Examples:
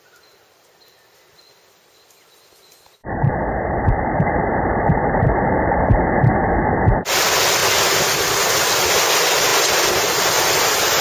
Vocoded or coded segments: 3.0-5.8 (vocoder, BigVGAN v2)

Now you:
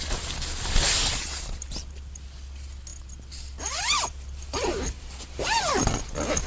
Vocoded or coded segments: none